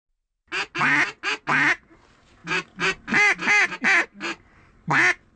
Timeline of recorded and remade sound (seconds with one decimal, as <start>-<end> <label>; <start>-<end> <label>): 0.0-5.4 recorded